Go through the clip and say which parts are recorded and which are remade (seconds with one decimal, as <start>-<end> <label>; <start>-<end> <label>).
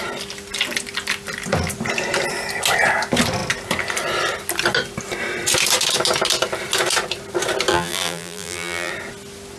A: 0.0-7.7 recorded; 7.7-8.9 remade; 8.9-9.6 recorded